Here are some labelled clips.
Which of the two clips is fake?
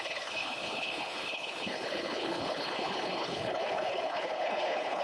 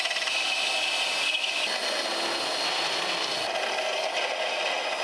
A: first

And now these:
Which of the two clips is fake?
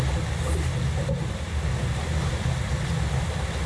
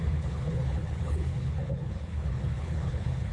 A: second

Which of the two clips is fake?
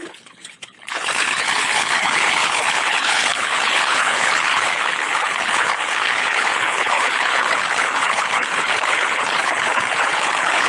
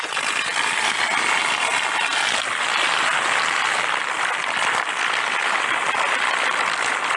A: first